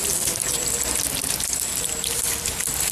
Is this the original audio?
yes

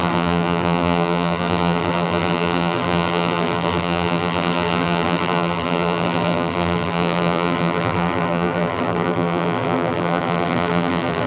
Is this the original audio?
no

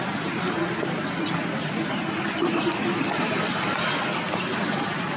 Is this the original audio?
no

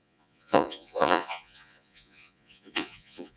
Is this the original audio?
no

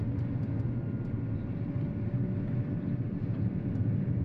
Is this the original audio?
yes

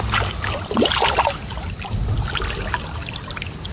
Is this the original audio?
yes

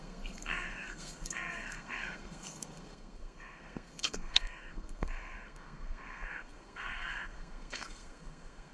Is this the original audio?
no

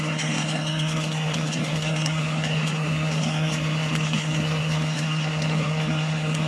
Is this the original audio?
no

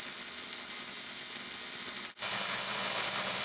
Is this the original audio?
yes